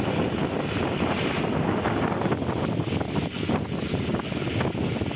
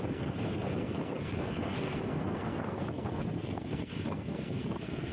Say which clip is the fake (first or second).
second